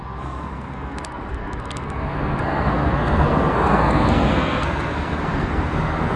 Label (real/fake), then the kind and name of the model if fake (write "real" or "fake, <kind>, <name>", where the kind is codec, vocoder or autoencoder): fake, codec, SNAC